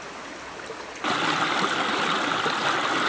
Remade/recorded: recorded